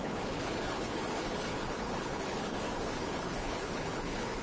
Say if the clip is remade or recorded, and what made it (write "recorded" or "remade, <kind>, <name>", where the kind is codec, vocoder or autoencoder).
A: remade, codec, HILCodec